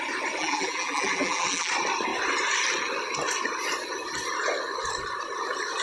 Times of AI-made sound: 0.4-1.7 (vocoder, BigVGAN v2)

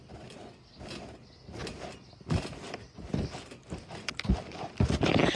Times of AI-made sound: none

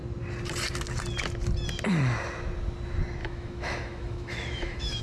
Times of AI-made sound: 3.2-5.0 (autoencoder, DAC-VAE)

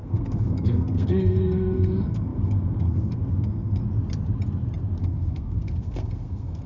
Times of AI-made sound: 0.0-3.8 (codec, SNAC); 5.0-6.7

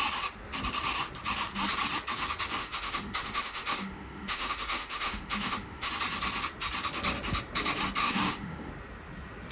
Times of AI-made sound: 2.6-5.9 (autoencoder, DAC-VAE); 8.0-8.7

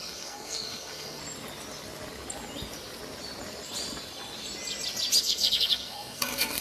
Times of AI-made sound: 0.0-1.2 (codec, SNAC); 5.2-6.6

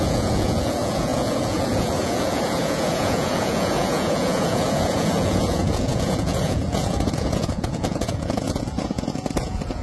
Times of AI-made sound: 0.0-9.8 (vocoder, Vocos)